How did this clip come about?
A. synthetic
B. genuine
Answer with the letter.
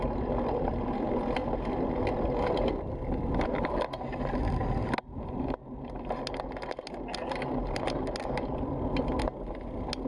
B